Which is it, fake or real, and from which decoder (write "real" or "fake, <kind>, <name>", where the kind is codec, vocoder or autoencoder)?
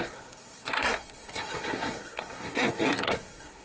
fake, codec, SNAC